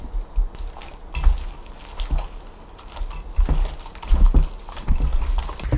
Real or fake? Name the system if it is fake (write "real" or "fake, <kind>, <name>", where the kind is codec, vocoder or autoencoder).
real